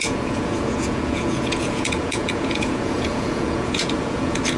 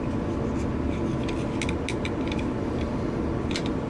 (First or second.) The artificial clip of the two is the first